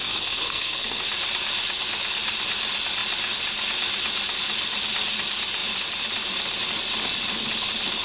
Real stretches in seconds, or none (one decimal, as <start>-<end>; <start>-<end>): 1.0-8.0